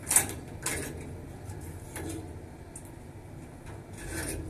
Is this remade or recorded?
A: recorded